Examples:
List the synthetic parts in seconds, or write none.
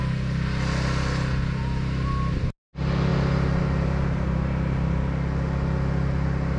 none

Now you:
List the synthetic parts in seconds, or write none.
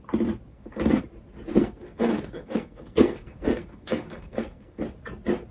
0.5-1.0 (codec, SNAC); 1.5-4.8